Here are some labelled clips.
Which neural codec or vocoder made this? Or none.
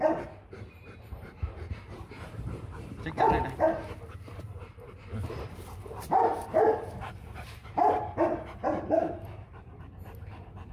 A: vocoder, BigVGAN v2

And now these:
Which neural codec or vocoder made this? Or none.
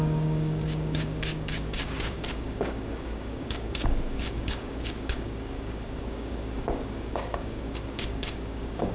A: codec, DAC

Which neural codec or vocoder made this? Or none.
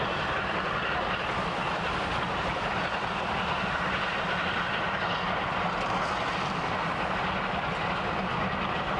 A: none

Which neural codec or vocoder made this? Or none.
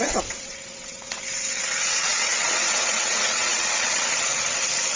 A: vocoder, WaveNeXt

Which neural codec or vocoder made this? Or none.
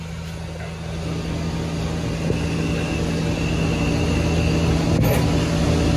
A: none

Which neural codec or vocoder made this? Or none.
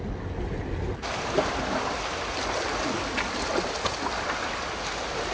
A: none